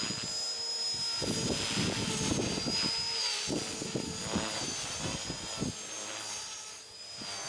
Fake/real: real